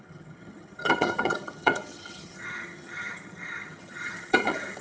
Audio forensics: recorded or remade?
remade